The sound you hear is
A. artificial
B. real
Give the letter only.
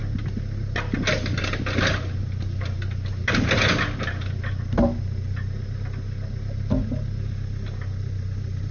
B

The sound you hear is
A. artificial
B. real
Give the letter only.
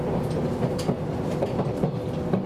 B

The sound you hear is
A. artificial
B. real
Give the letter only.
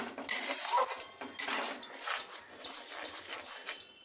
A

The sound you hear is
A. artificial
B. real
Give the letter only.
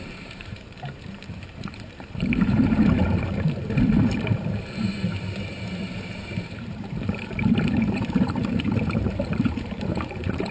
A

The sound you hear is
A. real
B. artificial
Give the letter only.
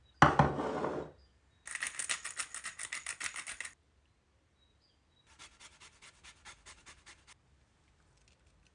A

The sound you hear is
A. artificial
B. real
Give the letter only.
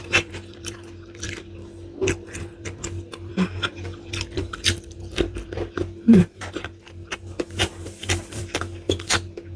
A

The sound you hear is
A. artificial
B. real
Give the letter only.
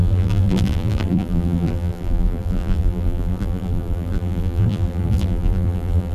A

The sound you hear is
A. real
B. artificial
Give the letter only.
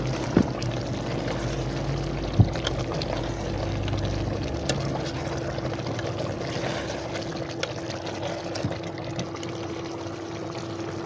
A